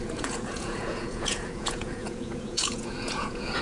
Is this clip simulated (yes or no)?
yes